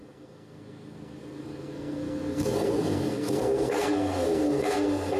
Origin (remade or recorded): remade